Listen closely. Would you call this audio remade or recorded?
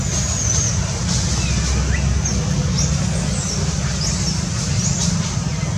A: recorded